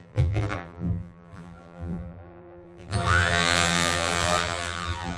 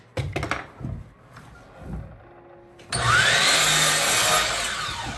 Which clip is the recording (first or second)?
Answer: second